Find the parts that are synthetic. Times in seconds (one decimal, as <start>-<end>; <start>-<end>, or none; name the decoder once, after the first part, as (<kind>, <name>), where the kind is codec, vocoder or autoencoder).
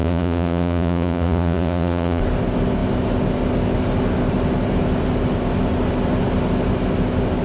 0.0-2.2 (vocoder, Vocos)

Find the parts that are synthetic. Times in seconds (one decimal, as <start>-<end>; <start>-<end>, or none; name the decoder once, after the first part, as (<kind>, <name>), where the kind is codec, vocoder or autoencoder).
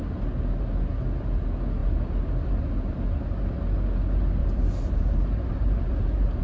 4.4-6.4 (vocoder, BigVGAN v2)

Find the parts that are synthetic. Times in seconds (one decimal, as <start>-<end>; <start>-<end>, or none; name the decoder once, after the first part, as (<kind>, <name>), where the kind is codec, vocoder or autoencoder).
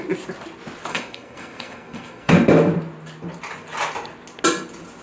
0.9-2.3 (codec, SNAC)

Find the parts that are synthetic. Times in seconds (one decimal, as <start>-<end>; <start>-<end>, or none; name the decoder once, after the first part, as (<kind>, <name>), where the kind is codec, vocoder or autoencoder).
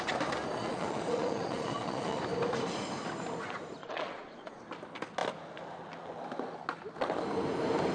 0.6-2.2 (vocoder, Vocos); 3.8-4.6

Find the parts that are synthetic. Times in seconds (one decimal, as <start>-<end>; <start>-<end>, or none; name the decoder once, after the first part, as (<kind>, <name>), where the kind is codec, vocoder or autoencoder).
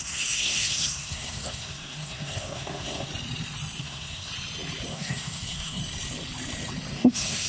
0.0-3.1 (codec, SNAC); 3.8-4.3; 4.9-5.8; 6.9-7.5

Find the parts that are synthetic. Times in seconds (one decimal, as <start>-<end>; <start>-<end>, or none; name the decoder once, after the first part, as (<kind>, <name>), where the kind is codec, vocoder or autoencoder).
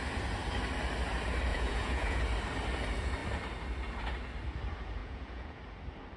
1.5-2.2 (vocoder, Vocos); 5.0-5.6